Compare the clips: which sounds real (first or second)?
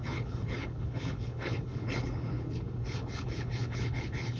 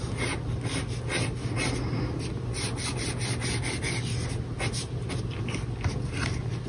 second